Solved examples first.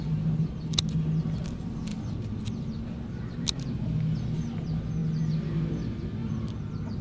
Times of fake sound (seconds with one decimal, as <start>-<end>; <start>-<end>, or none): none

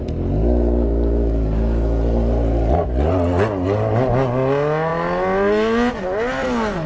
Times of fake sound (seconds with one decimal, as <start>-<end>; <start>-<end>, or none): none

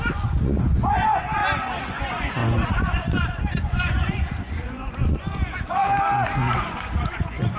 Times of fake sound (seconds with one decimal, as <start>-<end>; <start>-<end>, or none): 0.0-1.4; 1.9-5.8; 6.5-7.6